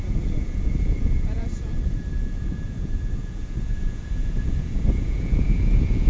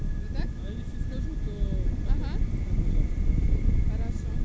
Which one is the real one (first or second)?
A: second